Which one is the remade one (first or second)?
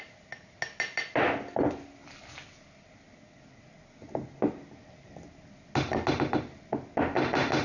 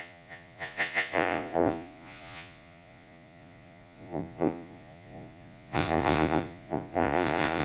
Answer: second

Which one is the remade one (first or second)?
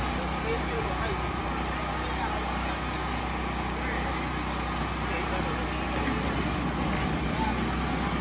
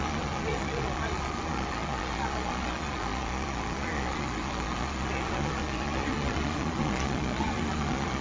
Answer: second